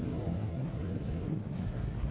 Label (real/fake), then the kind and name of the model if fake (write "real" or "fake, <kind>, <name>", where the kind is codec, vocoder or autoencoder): fake, codec, SNAC